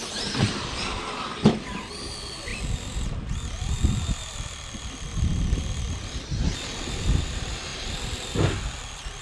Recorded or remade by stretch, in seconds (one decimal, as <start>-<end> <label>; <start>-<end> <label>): 0.0-9.2 remade